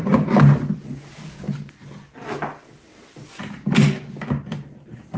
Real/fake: real